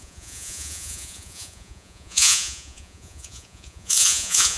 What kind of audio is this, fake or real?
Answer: fake